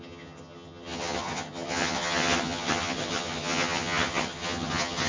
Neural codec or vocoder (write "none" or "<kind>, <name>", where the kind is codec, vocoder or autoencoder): vocoder, HiFi-GAN